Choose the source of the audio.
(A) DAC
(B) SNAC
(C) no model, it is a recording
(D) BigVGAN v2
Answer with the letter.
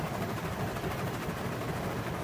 C